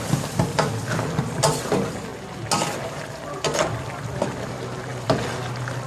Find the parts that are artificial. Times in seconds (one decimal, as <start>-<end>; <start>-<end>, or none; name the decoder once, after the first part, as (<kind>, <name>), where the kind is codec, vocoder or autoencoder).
4.9-5.5 (vocoder, BigVGAN v2)